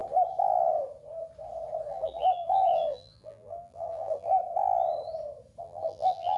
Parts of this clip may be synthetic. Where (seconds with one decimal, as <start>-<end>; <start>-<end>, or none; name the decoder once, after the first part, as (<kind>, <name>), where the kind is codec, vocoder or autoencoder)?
1.9-4.4 (vocoder, BigVGAN v2); 5.6-6.4